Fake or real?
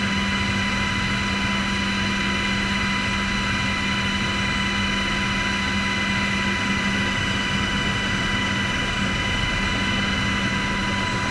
real